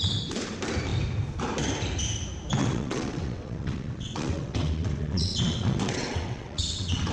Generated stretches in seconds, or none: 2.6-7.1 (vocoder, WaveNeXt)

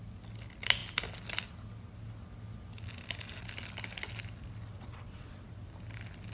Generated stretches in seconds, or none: 4.7-5.5 (vocoder, WaveNeXt)

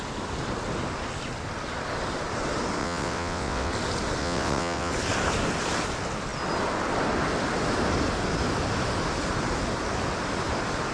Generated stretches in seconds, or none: 2.8-3.7 (vocoder, WaveNeXt); 4.2-4.9

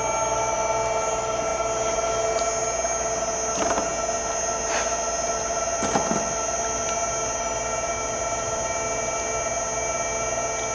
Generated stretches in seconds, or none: none

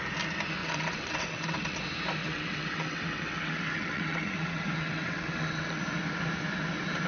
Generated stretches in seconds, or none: 0.6-1.8 (vocoder, WaveNeXt); 2.2-5.8

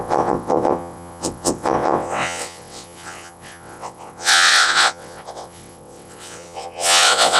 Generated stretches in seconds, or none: 0.0-7.4 (vocoder, WaveNeXt)

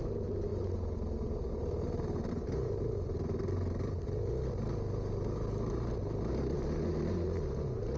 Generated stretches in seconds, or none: none